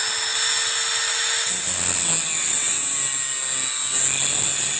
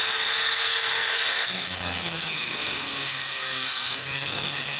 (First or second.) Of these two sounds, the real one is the first